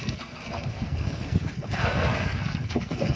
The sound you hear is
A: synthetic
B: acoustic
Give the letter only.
A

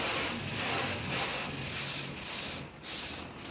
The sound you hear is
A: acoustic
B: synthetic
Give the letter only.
A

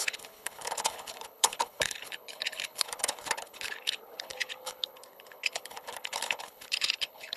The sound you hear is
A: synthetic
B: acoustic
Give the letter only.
A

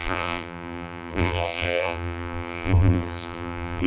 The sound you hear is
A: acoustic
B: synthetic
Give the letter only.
B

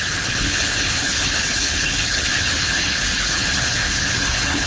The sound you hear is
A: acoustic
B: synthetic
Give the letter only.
B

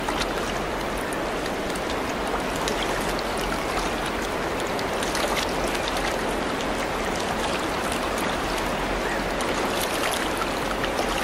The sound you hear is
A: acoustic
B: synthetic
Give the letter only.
A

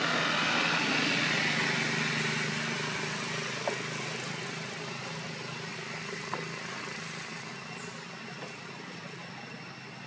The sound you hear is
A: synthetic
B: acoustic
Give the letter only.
B